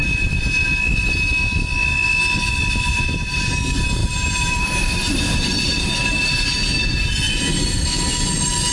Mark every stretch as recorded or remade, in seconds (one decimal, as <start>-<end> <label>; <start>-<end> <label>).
0.0-2.9 recorded; 2.9-3.5 remade; 3.5-4.0 recorded; 4.0-7.3 remade; 7.3-8.7 recorded